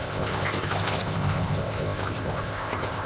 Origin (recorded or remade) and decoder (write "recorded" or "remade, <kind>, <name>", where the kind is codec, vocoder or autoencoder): remade, codec, ZipCodec